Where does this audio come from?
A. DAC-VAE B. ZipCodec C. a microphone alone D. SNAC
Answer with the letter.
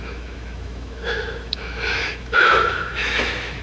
A